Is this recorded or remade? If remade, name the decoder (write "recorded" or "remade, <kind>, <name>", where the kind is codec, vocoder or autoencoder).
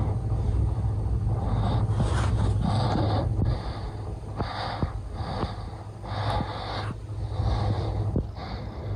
recorded